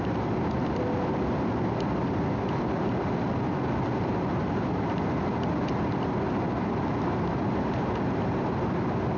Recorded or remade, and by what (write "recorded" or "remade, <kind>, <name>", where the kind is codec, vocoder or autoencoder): recorded